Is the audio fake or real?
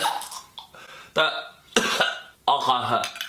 real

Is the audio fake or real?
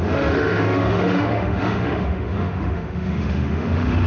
fake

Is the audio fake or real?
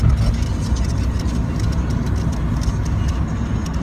real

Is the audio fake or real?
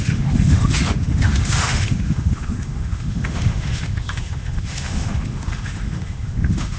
fake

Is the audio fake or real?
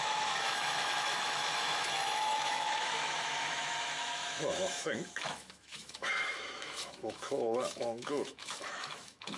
fake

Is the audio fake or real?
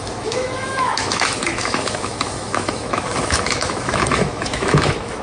fake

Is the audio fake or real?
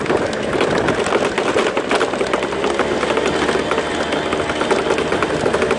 real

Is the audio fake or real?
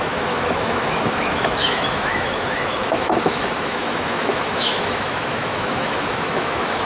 fake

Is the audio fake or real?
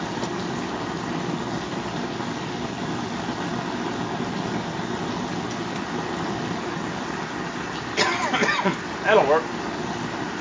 real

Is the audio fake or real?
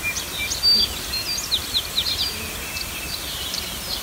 real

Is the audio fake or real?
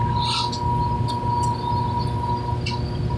real